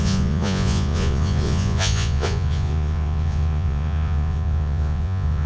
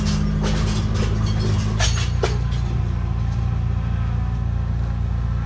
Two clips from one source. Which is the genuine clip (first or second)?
second